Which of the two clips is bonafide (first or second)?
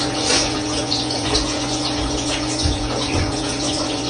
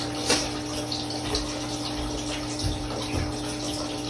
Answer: second